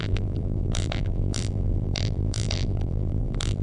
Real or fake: fake